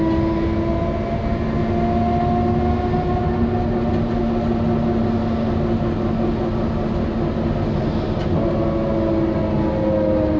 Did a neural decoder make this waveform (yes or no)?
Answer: no